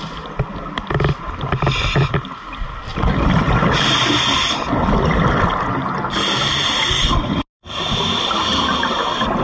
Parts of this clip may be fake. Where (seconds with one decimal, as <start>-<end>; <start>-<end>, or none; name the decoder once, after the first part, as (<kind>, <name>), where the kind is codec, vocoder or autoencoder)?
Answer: none